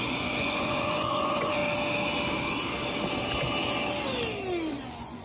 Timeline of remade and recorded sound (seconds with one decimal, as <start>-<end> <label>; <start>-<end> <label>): 0.0-1.6 remade; 1.6-4.7 recorded; 4.7-5.2 remade